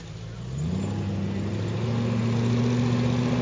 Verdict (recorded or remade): recorded